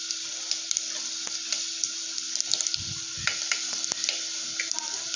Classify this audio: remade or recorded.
recorded